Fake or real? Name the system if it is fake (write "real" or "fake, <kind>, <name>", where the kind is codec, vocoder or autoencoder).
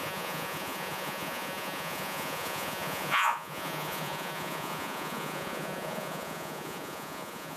fake, vocoder, Vocos